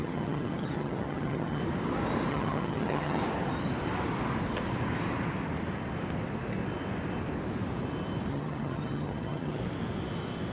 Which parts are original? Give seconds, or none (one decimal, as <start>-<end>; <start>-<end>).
1.6-2.3; 3.2-8.3; 9.6-10.5